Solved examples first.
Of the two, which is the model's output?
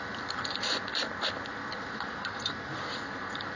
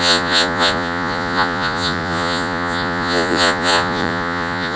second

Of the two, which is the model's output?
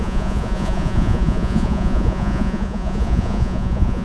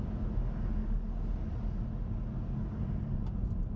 first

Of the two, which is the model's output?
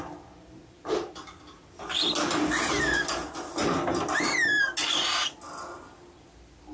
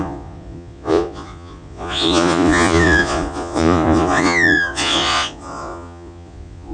second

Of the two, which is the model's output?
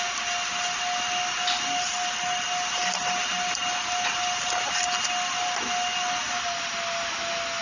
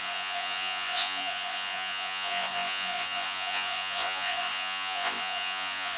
second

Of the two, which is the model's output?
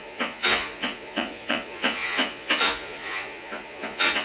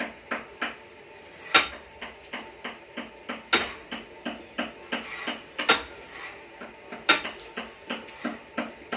first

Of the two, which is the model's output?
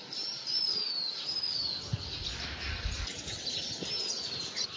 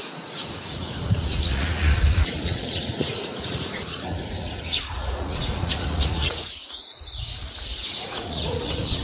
second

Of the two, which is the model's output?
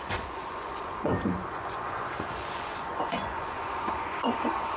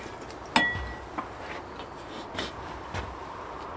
first